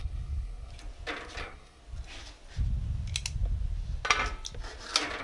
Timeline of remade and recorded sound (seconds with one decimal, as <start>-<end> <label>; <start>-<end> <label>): 0.0-0.7 remade; 0.7-1.4 recorded; 1.4-1.8 remade; 1.8-5.2 recorded